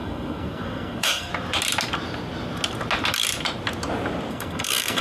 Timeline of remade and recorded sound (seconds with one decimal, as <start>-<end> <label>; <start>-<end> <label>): 0.0-1.3 remade; 1.3-4.3 recorded; 4.3-5.0 remade